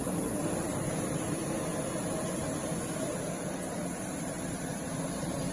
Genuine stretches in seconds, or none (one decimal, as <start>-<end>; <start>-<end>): 1.4-3.4